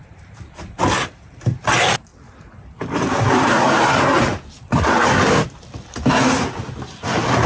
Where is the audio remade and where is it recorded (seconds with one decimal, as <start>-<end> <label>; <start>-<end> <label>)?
0.0-7.5 recorded